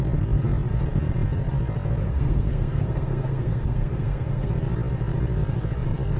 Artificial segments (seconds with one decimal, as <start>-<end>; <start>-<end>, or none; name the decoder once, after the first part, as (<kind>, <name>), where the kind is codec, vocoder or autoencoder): 2.0-4.5 (codec, SNAC)